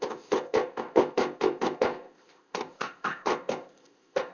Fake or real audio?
fake